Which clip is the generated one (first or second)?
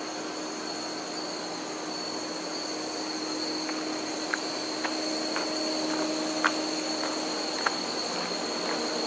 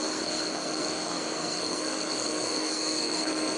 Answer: second